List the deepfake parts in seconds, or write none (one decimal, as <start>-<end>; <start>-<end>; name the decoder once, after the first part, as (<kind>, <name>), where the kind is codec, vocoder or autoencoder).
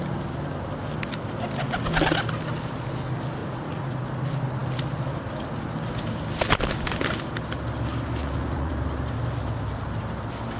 3.4-4.0 (vocoder, Vocos); 8.2-8.7